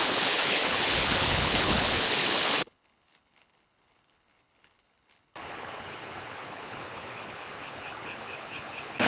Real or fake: fake